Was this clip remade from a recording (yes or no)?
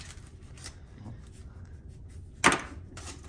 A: no